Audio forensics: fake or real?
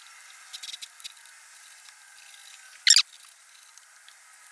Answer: real